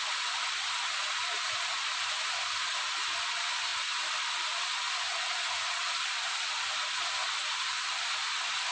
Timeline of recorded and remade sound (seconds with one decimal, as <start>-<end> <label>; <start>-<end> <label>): 0.0-8.7 recorded